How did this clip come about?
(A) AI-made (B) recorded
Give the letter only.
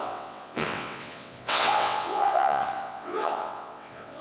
A